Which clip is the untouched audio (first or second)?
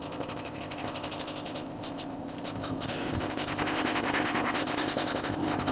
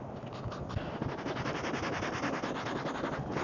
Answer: second